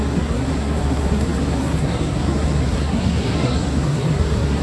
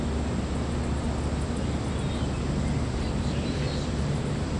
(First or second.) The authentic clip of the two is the second